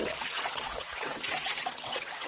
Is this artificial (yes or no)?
yes